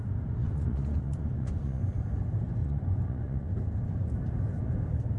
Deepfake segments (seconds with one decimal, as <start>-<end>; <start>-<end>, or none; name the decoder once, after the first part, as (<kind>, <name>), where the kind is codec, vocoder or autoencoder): 0.4-1.8 (vocoder, Vocos); 2.6-3.5